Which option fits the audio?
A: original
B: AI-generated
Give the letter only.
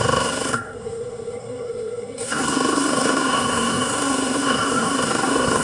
B